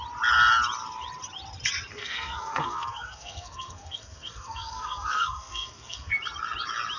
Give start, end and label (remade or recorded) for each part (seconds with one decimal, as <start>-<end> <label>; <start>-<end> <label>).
0.0-1.9 recorded; 1.9-6.1 remade; 6.1-7.0 recorded